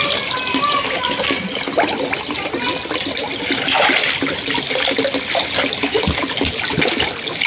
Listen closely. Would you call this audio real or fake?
real